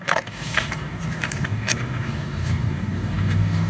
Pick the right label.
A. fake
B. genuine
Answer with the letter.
A